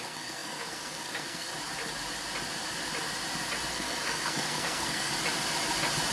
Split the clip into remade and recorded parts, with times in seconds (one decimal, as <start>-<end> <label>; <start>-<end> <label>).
0.0-1.5 remade; 1.5-3.7 recorded; 3.7-5.1 remade; 5.1-6.1 recorded